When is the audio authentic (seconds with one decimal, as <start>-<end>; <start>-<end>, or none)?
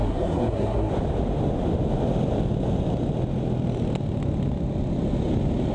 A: 0.9-5.7